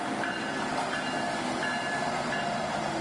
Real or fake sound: real